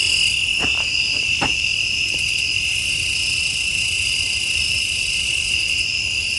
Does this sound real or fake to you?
real